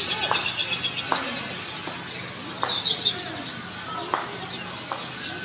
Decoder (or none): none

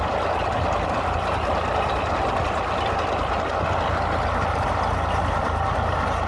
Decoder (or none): none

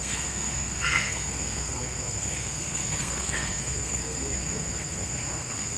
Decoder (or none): codec, SNAC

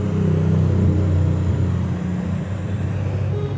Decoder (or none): none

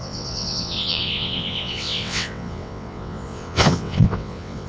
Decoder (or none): vocoder, WaveNeXt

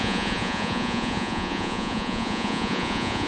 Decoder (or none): vocoder, Vocos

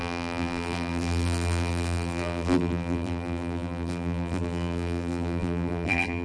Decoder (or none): vocoder, BigVGAN v2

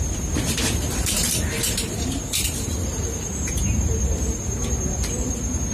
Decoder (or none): vocoder, BigVGAN v2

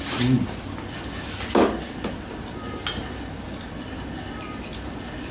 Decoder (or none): none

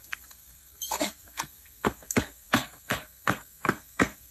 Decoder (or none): codec, SNAC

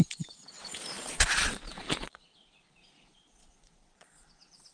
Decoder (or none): vocoder, Vocos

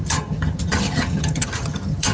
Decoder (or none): vocoder, HiFi-GAN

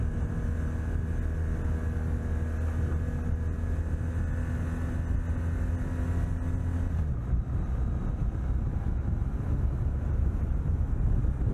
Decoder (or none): none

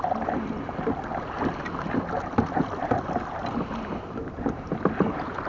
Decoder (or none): none